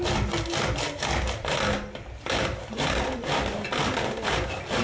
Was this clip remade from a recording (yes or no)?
no